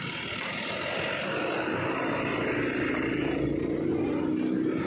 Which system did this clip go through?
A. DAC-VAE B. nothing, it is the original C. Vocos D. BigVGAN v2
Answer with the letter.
B